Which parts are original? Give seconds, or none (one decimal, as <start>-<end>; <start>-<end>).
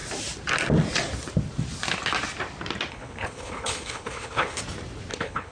0.0-2.9; 4.6-5.1